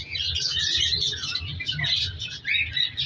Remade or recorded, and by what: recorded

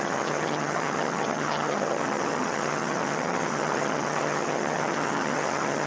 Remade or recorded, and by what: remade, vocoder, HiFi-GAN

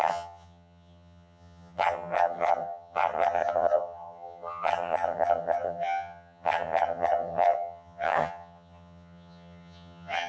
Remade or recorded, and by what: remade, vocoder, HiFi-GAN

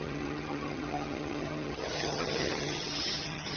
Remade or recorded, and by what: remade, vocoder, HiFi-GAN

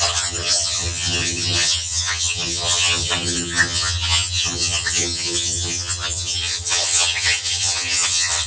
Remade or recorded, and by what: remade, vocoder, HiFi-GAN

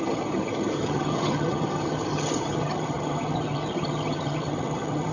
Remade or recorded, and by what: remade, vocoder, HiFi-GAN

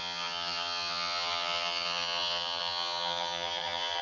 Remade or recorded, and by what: remade, vocoder, HiFi-GAN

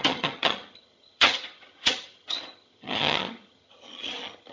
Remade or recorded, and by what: remade, vocoder, HiFi-GAN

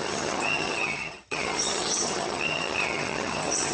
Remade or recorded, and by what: remade, vocoder, HiFi-GAN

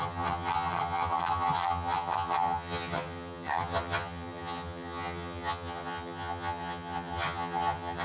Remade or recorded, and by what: remade, vocoder, HiFi-GAN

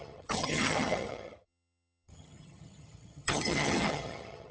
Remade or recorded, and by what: remade, vocoder, HiFi-GAN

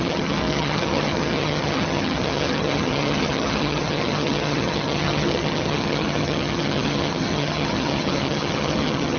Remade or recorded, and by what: remade, vocoder, HiFi-GAN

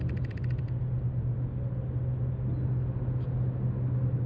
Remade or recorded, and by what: recorded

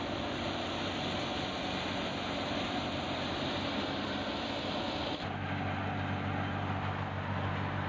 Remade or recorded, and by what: recorded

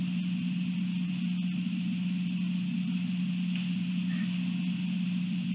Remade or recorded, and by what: recorded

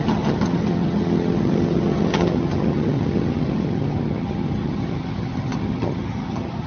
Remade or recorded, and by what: remade, vocoder, HiFi-GAN